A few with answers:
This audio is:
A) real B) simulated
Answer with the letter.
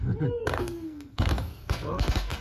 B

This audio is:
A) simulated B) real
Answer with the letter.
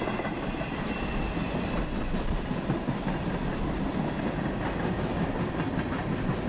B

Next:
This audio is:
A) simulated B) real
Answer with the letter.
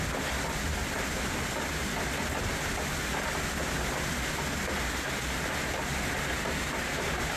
B